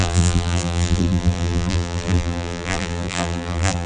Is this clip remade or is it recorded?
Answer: remade